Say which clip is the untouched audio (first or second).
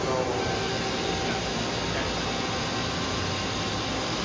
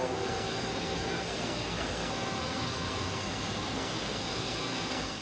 first